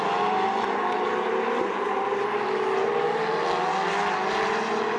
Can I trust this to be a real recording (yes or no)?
yes